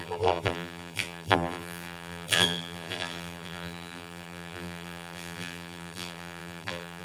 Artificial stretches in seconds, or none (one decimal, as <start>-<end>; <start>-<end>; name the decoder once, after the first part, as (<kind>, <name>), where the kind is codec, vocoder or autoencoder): 0.0-7.0 (vocoder, BigVGAN v2)